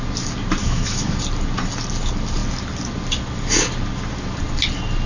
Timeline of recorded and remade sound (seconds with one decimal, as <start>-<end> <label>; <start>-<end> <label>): 0.0-0.6 recorded; 0.6-1.2 remade; 1.2-5.1 recorded